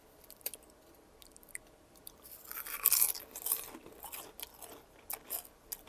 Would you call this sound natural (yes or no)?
yes